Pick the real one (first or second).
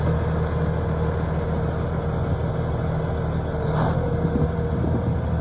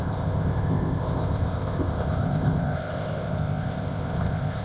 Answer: first